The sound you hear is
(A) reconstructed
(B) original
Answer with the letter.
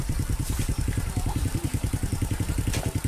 B